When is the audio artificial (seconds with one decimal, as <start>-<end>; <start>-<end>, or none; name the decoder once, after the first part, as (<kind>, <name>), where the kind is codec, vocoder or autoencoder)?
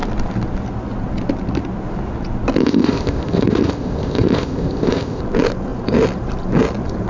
2.6-5.2 (codec, ZipCodec)